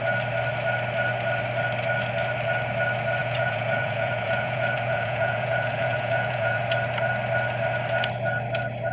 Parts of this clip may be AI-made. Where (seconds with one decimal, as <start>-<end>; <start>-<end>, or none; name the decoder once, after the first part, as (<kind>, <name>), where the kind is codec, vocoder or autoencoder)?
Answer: 3.2-6.6 (vocoder, Vocos)